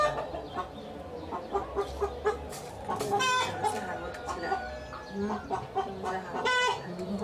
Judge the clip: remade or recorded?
recorded